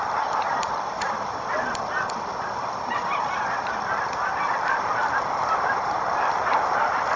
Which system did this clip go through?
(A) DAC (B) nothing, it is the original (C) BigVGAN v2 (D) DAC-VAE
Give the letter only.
B